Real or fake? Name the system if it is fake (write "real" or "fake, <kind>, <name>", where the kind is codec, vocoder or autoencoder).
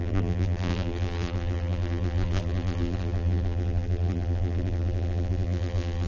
fake, vocoder, BigVGAN v2